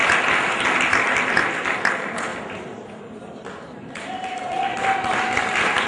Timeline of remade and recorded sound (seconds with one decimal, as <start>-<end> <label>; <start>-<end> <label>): 0.0-2.3 recorded; 2.3-5.9 remade